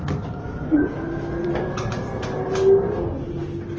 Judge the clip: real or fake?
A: real